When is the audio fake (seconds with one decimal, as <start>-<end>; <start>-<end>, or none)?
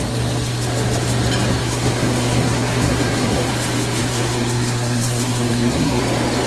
1.6-3.5; 4.0-6.0